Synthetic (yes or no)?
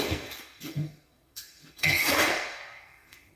yes